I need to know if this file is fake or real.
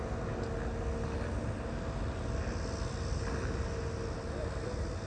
real